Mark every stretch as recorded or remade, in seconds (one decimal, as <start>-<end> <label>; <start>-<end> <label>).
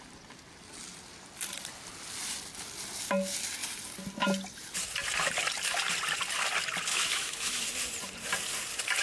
0.0-6.9 recorded; 6.9-7.6 remade; 7.6-9.0 recorded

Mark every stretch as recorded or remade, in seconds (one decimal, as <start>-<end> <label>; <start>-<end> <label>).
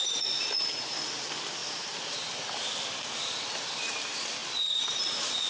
0.0-5.5 recorded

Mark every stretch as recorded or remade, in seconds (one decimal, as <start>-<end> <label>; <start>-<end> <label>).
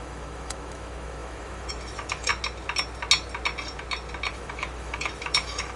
0.0-2.3 remade; 2.3-4.3 recorded; 4.3-5.8 remade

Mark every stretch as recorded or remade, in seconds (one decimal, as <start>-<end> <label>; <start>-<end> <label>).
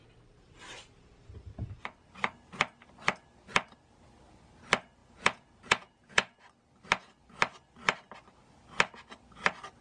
0.0-5.0 recorded; 5.0-6.4 remade; 6.4-9.8 recorded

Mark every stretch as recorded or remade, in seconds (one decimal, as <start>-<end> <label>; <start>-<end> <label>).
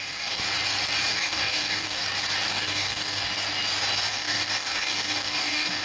0.0-0.4 remade; 0.4-1.1 recorded; 1.1-2.0 remade; 2.0-2.5 recorded; 2.5-3.3 remade; 3.3-4.1 recorded; 4.1-5.8 remade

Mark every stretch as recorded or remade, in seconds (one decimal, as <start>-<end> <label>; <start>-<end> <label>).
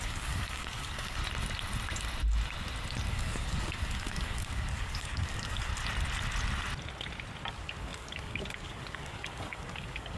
0.0-1.2 remade; 1.2-3.1 recorded; 3.1-5.7 remade; 5.7-7.5 recorded; 7.5-10.2 remade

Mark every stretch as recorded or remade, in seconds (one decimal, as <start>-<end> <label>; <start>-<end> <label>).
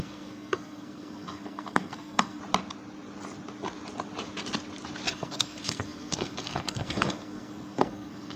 0.0-2.4 remade; 2.4-5.1 recorded; 5.1-8.4 remade